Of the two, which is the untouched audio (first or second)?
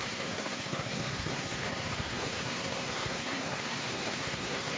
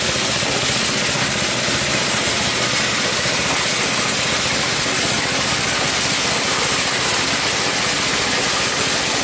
second